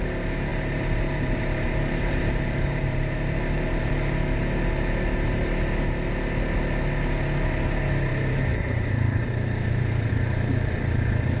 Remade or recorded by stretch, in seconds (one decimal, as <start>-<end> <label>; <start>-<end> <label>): 0.0-0.5 recorded; 0.5-3.9 remade; 3.9-8.1 recorded; 8.1-11.4 remade